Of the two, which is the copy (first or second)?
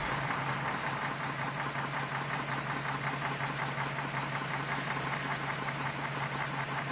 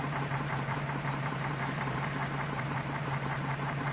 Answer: second